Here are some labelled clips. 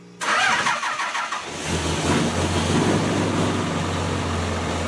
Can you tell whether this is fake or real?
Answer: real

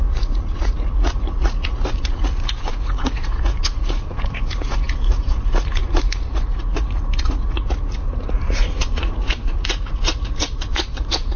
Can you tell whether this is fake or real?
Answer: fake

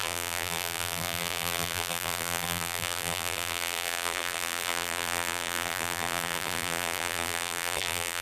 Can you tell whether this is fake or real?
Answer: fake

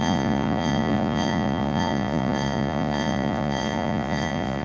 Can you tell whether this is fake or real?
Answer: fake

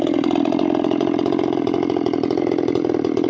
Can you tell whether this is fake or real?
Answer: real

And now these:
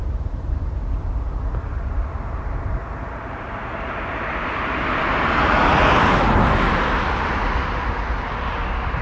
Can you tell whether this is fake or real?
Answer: real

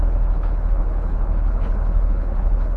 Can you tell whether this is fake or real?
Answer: fake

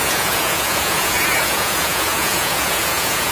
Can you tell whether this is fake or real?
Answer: fake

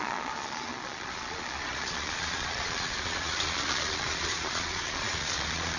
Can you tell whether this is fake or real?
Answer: fake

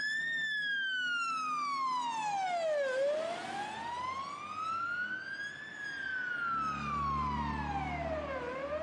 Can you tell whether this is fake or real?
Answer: real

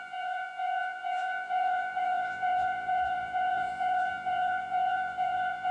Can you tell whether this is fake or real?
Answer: fake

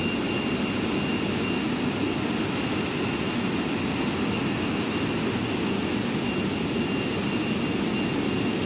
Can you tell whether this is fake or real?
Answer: real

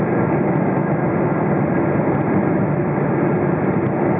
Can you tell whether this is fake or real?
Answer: real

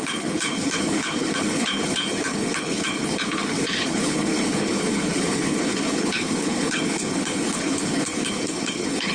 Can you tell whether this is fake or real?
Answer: fake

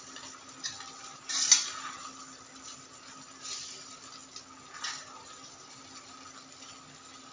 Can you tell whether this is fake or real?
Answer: real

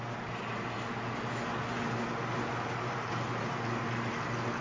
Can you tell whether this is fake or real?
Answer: real